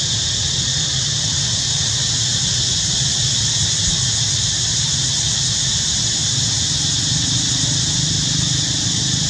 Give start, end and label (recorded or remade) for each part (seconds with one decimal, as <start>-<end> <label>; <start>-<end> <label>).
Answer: 0.0-9.3 recorded